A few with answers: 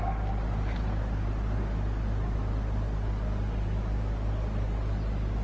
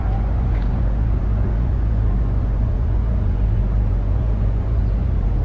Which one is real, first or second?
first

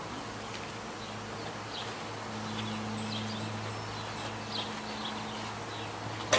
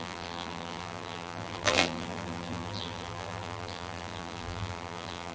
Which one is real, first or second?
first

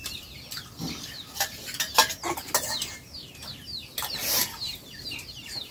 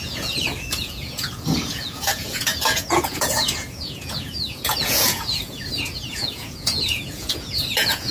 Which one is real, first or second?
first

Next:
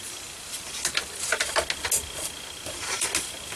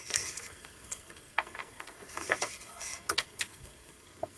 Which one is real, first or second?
first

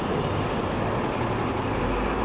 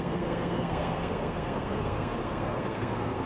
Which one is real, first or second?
first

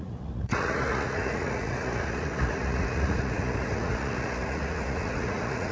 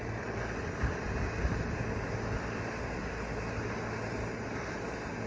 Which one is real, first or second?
second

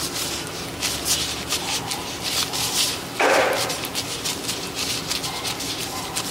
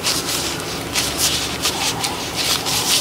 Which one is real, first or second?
first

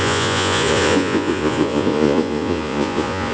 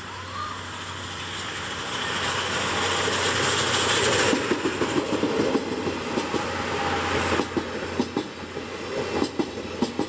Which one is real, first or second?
second